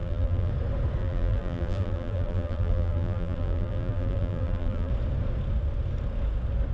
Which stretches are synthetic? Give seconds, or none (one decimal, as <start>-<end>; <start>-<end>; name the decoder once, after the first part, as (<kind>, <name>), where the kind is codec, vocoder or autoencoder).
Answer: 0.0-0.5 (vocoder, BigVGAN v2); 1.0-4.9